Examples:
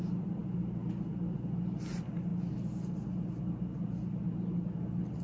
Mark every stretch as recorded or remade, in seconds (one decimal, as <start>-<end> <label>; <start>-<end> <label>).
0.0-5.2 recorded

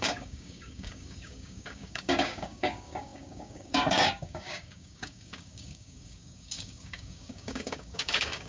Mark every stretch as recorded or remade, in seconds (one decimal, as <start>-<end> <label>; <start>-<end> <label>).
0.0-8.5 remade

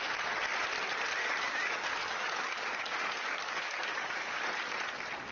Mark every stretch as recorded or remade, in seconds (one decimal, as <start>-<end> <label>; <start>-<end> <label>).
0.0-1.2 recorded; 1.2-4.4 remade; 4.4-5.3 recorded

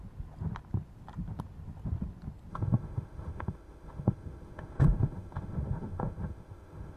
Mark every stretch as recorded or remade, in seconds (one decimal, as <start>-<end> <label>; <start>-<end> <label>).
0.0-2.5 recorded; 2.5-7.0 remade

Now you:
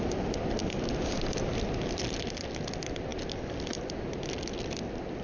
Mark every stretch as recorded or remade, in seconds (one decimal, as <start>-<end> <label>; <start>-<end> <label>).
0.0-5.2 recorded